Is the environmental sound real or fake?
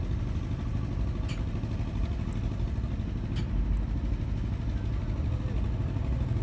real